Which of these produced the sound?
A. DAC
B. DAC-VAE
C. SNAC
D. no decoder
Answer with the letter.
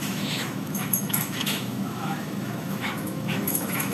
B